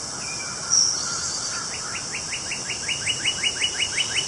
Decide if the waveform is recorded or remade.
recorded